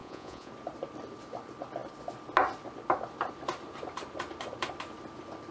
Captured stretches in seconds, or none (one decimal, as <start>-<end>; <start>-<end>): 0.5-5.5

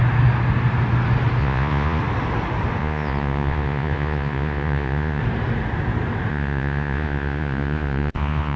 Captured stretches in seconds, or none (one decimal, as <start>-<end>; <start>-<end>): 0.0-1.4; 2.0-2.8; 5.2-6.3